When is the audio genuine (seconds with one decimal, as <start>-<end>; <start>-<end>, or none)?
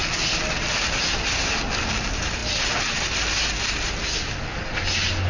0.0-5.3